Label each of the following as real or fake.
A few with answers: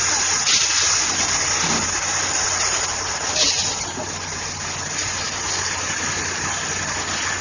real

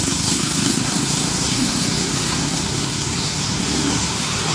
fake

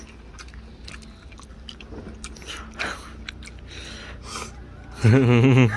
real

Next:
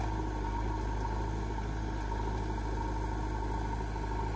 real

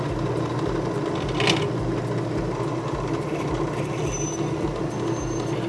real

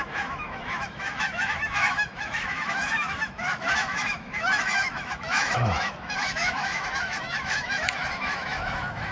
fake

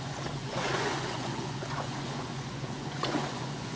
fake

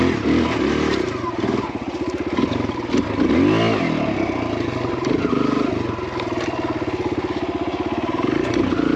real